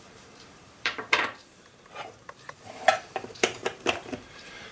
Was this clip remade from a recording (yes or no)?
yes